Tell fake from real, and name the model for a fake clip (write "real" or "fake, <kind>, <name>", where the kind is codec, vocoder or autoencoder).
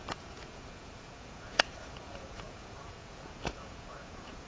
fake, vocoder, Vocos